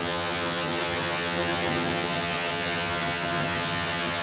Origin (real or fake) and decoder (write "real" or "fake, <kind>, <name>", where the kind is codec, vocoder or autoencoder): fake, vocoder, HiFi-GAN